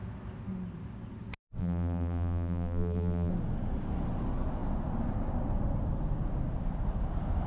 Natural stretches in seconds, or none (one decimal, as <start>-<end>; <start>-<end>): 0.0-1.6; 3.3-7.5